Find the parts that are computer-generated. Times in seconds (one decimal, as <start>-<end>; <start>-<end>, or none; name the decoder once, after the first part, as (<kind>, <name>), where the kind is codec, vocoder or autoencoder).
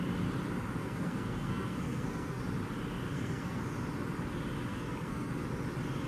0.8-2.4 (codec, SNAC); 3.1-3.6; 4.7-5.3